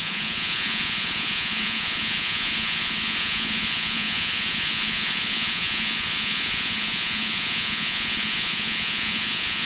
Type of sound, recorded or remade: remade